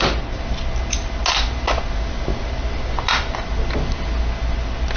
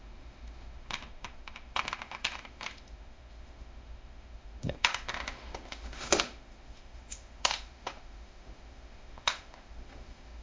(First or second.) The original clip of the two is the first